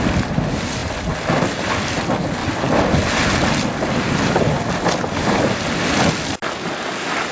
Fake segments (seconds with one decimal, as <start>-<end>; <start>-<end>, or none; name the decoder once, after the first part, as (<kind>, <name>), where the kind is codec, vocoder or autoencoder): none